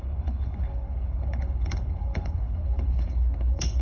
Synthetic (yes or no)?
yes